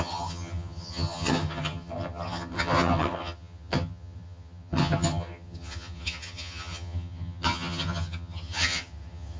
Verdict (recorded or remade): remade